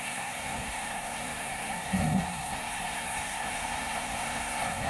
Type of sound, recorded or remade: remade